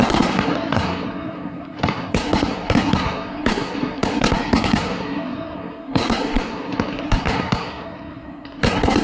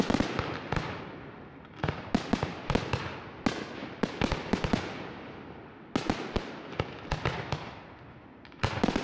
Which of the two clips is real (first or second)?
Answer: second